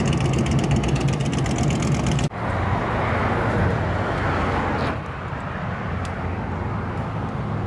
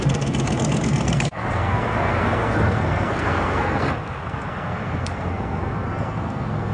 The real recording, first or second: first